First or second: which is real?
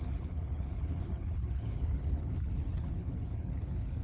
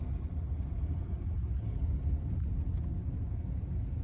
second